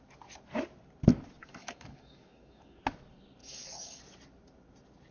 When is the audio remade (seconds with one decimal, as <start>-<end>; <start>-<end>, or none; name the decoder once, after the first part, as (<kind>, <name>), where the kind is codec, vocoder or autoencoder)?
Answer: 1.4-2.8 (codec, DAC); 3.4-4.0